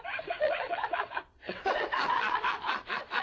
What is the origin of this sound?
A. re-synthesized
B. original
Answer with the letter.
A